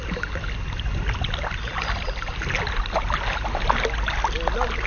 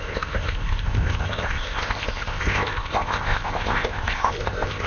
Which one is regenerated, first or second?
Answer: second